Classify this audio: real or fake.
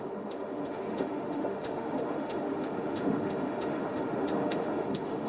fake